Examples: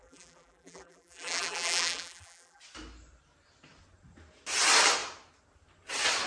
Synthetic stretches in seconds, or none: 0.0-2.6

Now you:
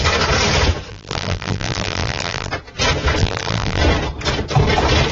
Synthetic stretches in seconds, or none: 0.9-2.5; 3.2-3.8

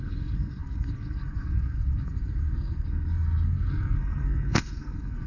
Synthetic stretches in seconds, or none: 0.0-5.3

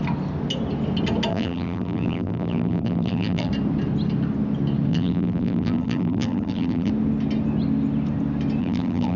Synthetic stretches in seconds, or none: 1.3-3.5; 4.9-6.9; 8.6-9.2

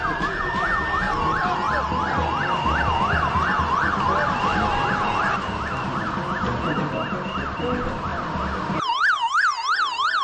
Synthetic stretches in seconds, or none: none

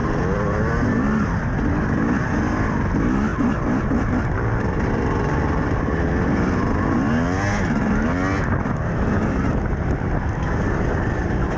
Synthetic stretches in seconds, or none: none